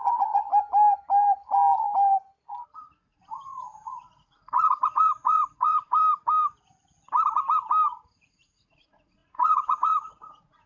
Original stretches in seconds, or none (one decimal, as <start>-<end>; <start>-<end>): 0.5-3.0; 6.0-8.3